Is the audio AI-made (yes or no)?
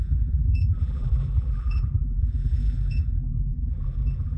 yes